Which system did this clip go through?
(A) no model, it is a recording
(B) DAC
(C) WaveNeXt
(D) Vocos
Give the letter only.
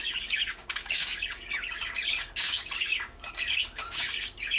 B